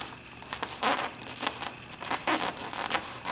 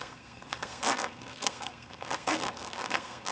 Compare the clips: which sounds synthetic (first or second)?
second